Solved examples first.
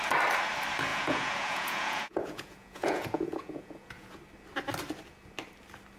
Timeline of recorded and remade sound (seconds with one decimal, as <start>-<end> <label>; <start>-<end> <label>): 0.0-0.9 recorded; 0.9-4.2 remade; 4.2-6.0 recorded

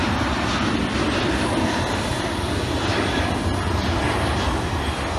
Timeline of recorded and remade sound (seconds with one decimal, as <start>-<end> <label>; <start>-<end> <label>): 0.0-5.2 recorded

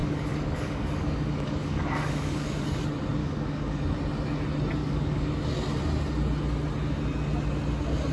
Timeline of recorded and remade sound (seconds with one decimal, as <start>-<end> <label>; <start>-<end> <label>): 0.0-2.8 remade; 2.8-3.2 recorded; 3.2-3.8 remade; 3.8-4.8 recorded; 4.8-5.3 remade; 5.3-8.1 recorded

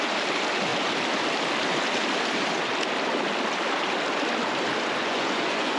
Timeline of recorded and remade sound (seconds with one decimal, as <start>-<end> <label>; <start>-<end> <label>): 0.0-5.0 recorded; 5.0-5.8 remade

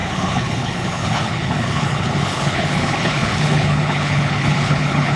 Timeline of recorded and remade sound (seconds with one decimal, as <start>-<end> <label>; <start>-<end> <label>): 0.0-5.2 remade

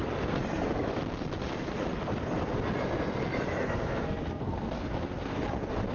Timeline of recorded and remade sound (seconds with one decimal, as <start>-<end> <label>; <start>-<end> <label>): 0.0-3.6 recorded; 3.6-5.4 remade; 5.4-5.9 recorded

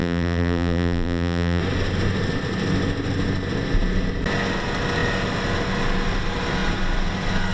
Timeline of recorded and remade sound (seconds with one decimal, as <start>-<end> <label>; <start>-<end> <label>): 0.0-1.6 remade; 1.6-7.5 recorded